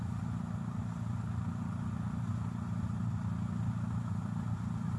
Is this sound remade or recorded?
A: recorded